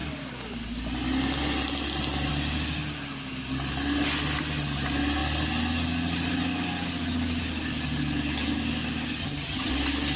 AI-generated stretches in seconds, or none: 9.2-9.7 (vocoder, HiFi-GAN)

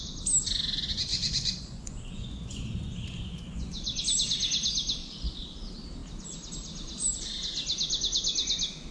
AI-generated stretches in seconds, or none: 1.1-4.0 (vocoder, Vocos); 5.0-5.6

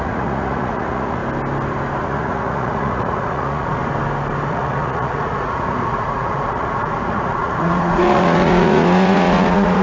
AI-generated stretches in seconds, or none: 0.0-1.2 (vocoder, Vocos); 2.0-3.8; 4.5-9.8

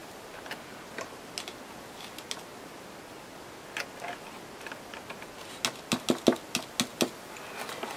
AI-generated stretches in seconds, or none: none